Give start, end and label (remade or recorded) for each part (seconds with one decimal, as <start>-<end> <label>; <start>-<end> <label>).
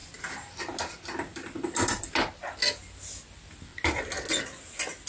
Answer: 0.0-5.1 recorded